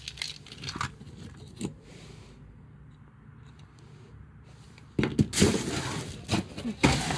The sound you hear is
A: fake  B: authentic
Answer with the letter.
B